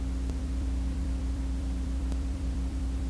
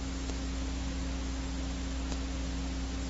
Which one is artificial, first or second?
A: first